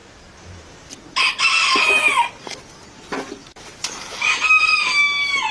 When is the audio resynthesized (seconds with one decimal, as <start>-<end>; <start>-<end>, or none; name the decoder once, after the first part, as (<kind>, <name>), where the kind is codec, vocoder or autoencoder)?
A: none